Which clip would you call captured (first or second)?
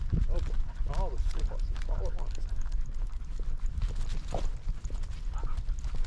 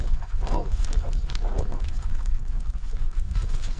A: first